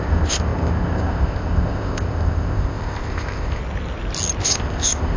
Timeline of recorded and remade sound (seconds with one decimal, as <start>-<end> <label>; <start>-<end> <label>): 0.0-3.6 remade; 3.6-4.4 recorded; 4.4-5.2 remade